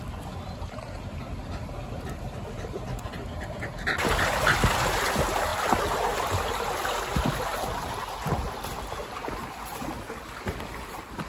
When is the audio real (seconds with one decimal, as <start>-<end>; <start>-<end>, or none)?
0.0-11.3